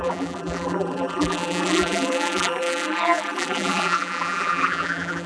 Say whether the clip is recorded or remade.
remade